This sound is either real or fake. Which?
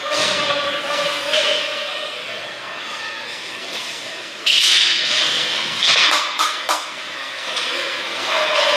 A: fake